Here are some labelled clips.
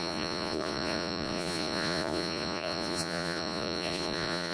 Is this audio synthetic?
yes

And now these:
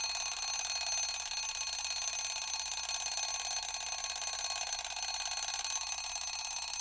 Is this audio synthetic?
no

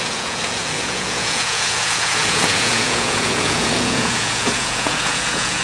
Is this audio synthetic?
yes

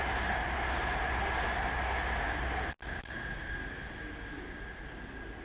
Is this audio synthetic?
no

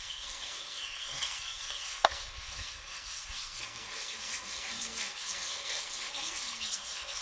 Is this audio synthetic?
yes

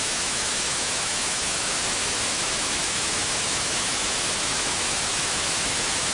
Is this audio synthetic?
yes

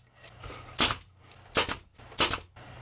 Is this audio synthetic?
no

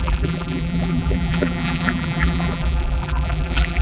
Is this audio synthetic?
yes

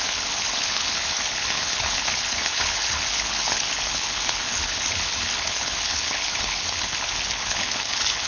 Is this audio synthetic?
yes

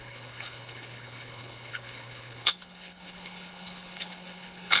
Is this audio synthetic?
yes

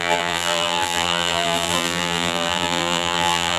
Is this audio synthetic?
yes